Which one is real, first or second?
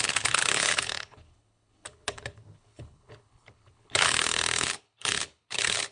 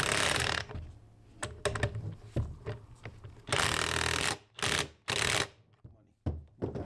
second